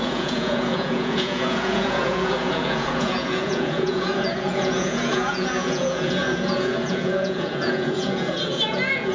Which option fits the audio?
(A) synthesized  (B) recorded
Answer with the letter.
A